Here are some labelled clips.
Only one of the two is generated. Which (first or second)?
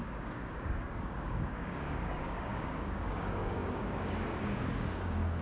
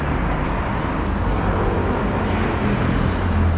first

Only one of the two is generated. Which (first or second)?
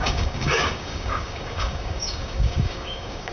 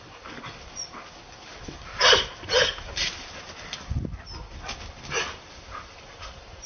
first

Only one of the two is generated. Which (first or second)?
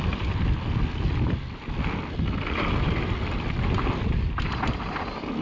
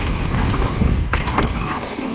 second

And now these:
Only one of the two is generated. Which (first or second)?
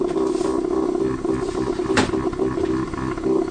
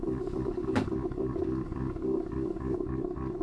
second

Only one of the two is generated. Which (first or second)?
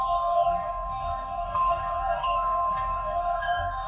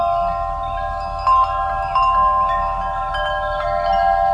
first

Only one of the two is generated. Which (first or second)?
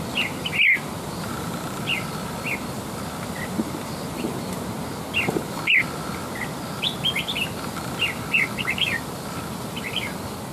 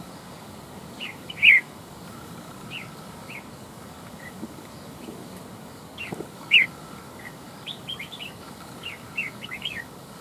second